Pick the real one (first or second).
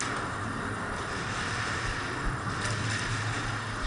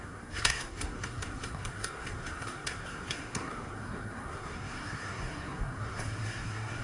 first